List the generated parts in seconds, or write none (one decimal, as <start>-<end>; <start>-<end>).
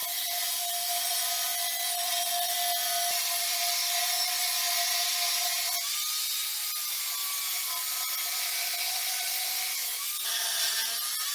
none